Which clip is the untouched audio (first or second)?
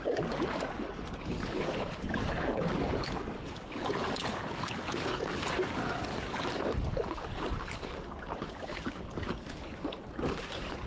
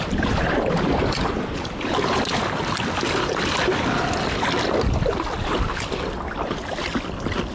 second